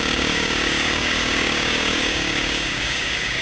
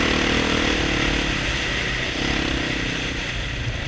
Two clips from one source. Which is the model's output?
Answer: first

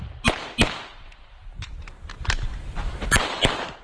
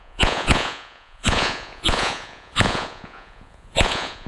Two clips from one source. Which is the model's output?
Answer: second